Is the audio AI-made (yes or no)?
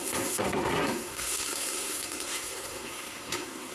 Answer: yes